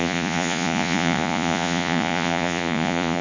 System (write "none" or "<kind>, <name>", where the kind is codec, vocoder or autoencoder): vocoder, Vocos